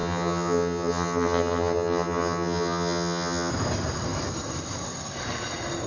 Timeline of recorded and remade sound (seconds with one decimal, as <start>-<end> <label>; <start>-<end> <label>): 0.0-3.5 remade; 3.5-5.9 recorded